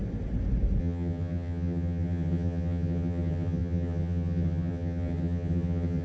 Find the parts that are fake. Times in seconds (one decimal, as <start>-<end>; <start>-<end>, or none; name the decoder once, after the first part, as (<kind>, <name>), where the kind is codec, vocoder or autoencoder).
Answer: 0.8-6.0 (vocoder, HiFi-GAN)